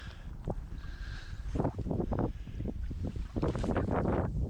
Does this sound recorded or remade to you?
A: remade